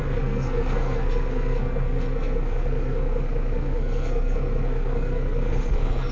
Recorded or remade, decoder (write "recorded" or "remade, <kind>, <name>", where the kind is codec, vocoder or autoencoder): remade, codec, SNAC